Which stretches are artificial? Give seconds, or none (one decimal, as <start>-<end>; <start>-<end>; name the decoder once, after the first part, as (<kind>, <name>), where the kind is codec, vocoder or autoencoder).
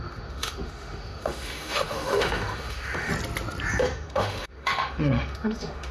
0.0-3.1 (autoencoder, DAC-VAE); 3.8-5.9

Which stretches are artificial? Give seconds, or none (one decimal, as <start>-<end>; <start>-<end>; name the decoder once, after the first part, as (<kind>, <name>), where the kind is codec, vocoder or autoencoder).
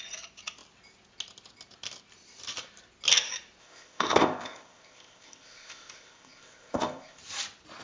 3.6-7.2 (codec, ZipCodec)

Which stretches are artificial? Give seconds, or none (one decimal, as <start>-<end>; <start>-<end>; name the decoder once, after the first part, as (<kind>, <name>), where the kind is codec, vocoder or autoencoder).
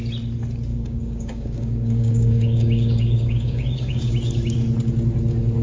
0.7-4.1 (codec, DAC)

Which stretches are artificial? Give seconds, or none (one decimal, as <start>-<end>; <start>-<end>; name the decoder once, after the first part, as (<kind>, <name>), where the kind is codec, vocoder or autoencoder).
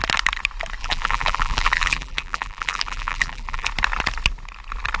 0.8-3.7 (vocoder, BigVGAN v2)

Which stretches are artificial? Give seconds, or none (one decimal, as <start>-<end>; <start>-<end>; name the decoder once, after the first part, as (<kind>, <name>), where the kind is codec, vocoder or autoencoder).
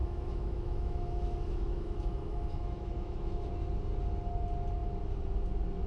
0.0-3.5 (autoencoder, DAC-VAE)